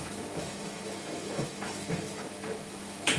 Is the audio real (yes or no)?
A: no